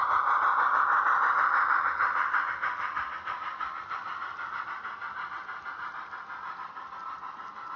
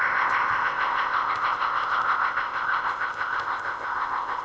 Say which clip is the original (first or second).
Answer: first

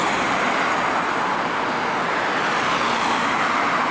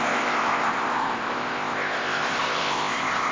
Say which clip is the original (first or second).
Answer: first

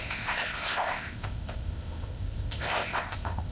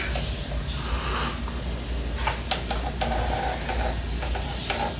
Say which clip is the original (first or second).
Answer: second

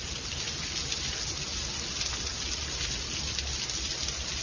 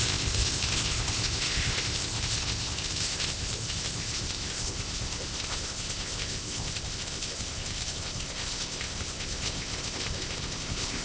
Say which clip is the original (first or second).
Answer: first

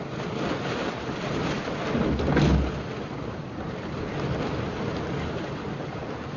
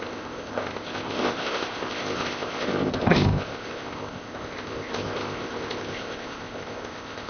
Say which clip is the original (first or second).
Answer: first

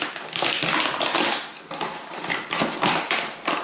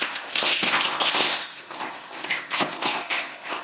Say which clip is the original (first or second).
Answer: first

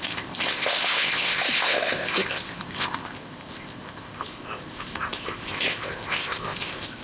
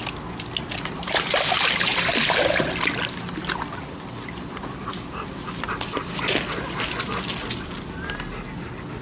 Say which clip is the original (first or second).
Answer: second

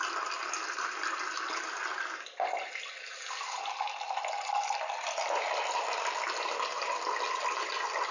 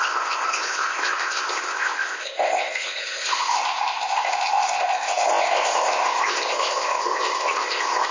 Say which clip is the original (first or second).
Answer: first